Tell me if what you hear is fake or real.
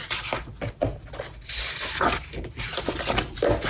real